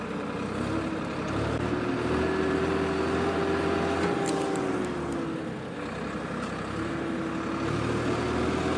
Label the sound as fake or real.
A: real